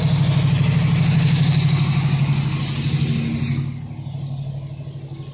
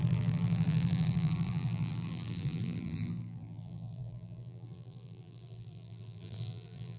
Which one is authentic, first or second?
first